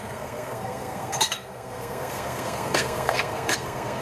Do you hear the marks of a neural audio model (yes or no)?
yes